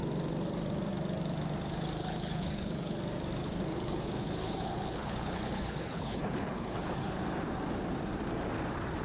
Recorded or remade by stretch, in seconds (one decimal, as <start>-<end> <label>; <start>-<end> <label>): 0.0-2.0 recorded; 2.0-3.0 remade; 3.0-3.4 recorded; 3.4-7.1 remade; 7.1-9.0 recorded